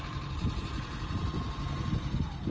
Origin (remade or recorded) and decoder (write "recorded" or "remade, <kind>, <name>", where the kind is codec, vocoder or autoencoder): recorded